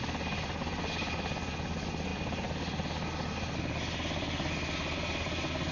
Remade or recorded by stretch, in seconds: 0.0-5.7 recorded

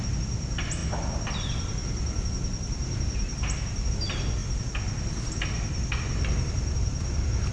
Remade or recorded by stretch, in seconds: 0.0-7.5 recorded

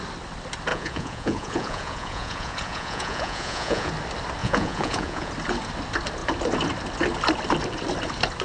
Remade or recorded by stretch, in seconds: 0.0-0.7 recorded; 0.7-3.9 remade; 3.9-4.4 recorded; 4.4-5.3 remade; 5.3-8.4 recorded